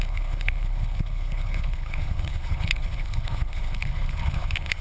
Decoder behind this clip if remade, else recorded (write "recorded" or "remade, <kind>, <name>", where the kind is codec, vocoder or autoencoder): remade, codec, HILCodec